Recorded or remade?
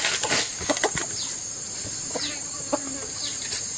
recorded